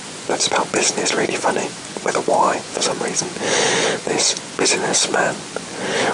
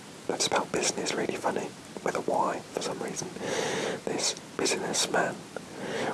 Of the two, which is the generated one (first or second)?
first